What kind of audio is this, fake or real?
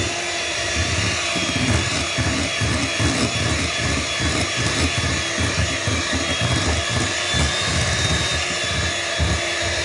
real